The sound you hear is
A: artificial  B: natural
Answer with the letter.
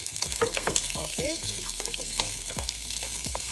A